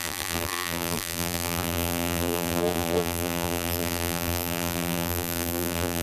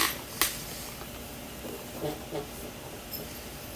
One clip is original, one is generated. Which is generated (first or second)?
first